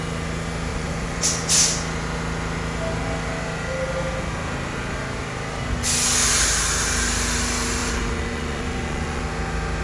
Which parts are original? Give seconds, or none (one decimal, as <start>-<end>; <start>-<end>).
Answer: 0.0-0.7; 1.2-7.8; 9.2-9.8